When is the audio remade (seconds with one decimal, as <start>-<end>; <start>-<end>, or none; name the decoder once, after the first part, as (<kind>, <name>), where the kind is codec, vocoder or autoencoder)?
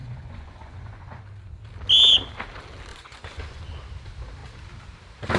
0.0-1.2 (vocoder, Vocos); 2.9-3.6